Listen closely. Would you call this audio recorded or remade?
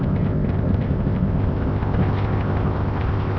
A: remade